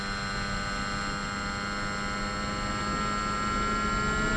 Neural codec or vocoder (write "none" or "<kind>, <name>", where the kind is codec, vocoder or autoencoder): none